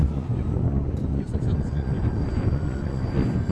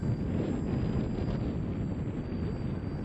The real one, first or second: second